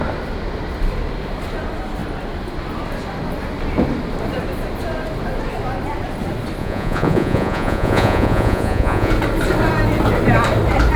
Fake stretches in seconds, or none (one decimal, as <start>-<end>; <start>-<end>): 6.6-9.1